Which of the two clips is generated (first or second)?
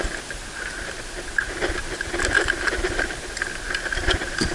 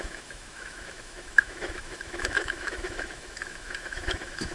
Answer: second